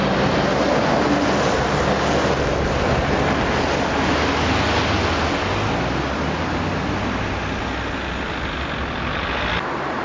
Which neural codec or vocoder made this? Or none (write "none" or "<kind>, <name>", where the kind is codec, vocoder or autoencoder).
none